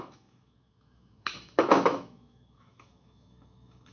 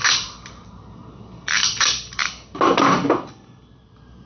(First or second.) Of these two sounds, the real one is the second